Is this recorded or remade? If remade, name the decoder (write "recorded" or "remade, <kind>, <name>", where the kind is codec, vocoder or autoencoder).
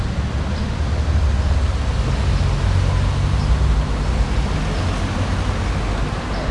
recorded